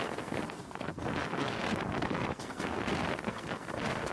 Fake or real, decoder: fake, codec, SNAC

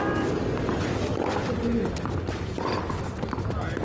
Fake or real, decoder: real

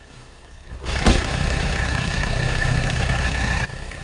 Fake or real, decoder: fake, codec, SNAC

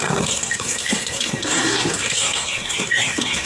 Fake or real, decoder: fake, codec, SNAC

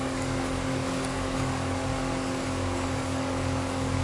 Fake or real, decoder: fake, codec, DAC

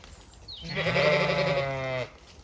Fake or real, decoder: real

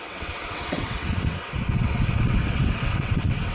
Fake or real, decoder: fake, vocoder, WaveNeXt